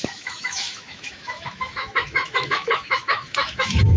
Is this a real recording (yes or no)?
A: no